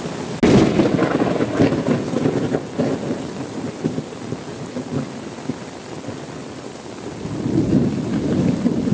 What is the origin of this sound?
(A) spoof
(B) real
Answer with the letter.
B